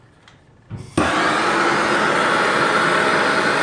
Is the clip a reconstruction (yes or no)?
no